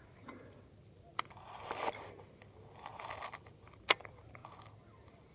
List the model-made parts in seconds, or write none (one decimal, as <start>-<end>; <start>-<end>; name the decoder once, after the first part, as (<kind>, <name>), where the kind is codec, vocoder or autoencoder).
none